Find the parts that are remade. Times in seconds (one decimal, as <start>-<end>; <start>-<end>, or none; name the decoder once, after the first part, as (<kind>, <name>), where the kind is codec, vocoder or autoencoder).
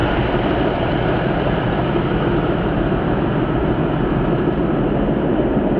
0.0-3.5 (vocoder, BigVGAN v2)